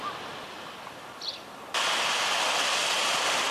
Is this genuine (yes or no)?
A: yes